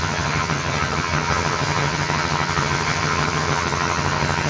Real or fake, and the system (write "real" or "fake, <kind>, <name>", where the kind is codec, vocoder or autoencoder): fake, vocoder, HiFi-GAN